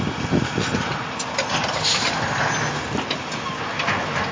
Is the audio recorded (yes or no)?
yes